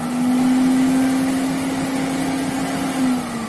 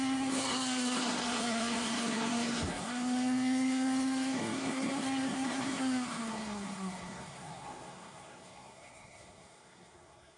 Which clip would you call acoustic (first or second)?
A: first